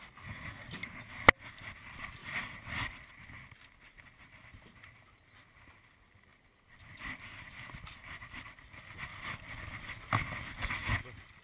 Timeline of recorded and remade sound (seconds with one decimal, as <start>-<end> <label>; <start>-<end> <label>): 0.0-2.2 recorded; 2.2-3.1 remade; 3.1-6.3 recorded; 6.3-9.5 remade; 9.5-11.4 recorded